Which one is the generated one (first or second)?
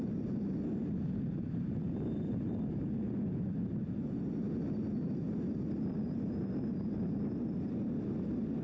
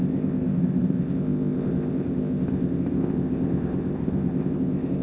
second